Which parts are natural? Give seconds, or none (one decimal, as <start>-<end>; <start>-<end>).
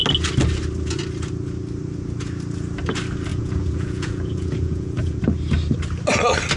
0.0-3.3; 5.2-6.6